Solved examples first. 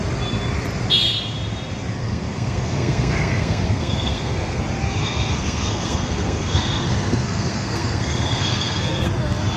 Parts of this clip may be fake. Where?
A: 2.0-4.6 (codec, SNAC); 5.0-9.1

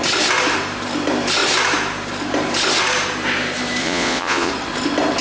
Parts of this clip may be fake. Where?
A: 3.8-4.5 (vocoder, Vocos)

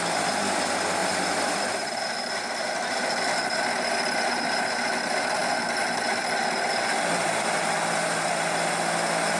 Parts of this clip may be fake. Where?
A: 1.0-5.0 (vocoder, BigVGAN v2); 5.4-7.6

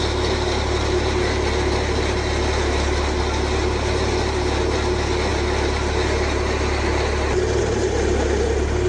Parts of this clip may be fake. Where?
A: none

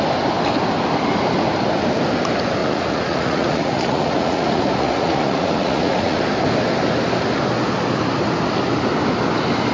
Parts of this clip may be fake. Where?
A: 2.6-6.2 (vocoder, Vocos)